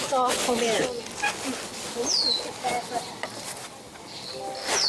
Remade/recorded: recorded